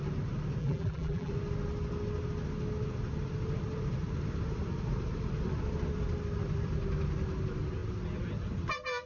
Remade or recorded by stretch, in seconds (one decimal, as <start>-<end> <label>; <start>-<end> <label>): 0.0-0.6 recorded; 0.6-1.3 remade; 1.3-9.1 recorded